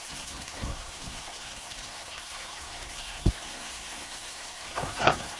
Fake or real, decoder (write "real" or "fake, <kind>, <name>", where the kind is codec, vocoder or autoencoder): fake, codec, SNAC